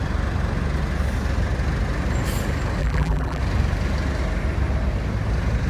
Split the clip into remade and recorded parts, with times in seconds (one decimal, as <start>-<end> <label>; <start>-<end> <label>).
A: 0.0-2.8 recorded; 2.8-3.4 remade; 3.4-5.7 recorded